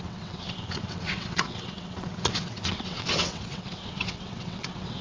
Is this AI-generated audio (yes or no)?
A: yes